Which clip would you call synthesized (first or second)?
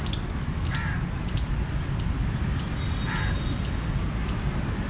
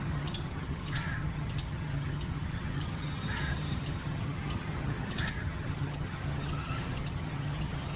second